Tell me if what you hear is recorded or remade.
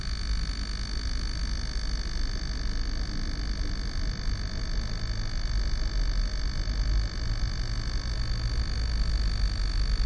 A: recorded